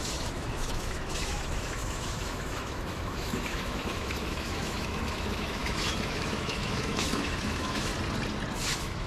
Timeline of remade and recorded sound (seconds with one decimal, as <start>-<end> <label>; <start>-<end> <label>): 0.0-7.9 remade; 7.9-8.7 recorded; 8.7-9.1 remade